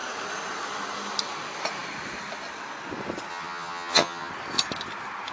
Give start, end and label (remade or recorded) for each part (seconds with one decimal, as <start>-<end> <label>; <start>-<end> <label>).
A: 0.0-3.3 recorded; 3.3-4.3 remade; 4.3-5.3 recorded